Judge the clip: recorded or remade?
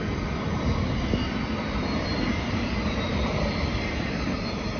recorded